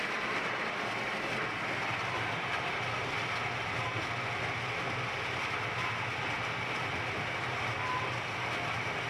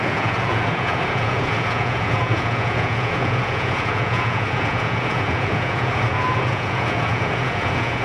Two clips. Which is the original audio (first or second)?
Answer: first